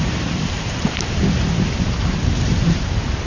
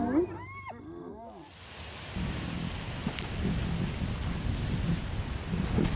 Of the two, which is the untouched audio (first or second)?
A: second